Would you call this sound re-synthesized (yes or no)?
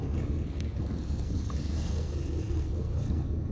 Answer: yes